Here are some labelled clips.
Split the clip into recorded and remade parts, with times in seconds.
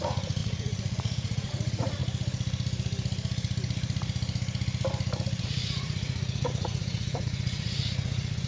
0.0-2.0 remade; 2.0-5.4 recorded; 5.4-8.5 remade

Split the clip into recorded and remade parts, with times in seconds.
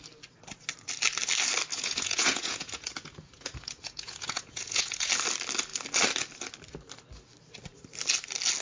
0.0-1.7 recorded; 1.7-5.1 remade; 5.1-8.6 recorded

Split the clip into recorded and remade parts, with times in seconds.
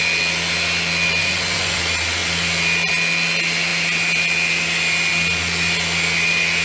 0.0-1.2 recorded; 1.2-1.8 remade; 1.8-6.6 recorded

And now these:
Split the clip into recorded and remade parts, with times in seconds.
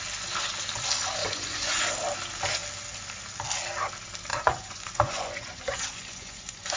0.0-1.2 recorded; 1.2-1.8 remade; 1.8-4.3 recorded; 4.3-6.8 remade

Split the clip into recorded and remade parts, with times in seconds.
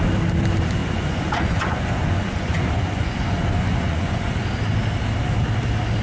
0.0-0.8 recorded; 0.8-4.4 remade; 4.4-6.0 recorded